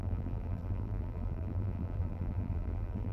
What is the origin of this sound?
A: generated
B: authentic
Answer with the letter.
A